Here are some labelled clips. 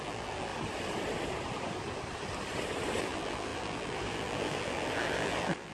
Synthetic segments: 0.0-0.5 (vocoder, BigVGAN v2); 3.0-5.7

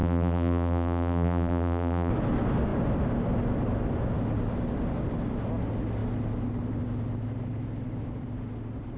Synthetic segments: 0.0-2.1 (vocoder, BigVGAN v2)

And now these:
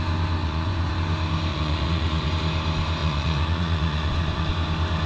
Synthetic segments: 0.4-0.9 (vocoder, Vocos); 1.5-2.3; 3.0-4.5